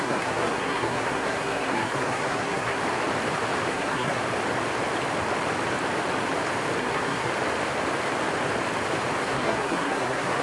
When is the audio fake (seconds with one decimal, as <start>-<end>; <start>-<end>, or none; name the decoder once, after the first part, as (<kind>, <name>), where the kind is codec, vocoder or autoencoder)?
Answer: 0.0-2.8 (codec, SNAC); 3.7-4.2; 6.8-7.3; 9.2-10.4